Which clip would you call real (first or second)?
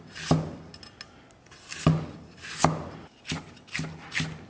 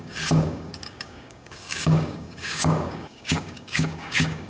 first